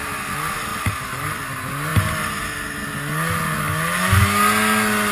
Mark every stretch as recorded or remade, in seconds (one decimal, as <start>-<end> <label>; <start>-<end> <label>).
0.0-0.7 recorded; 0.7-1.4 remade; 1.4-5.1 recorded